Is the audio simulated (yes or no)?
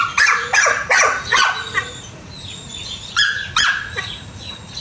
yes